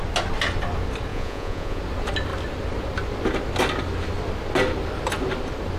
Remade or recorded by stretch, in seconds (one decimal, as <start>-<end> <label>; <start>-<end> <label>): 0.0-1.1 recorded; 1.1-1.8 remade; 1.8-5.8 recorded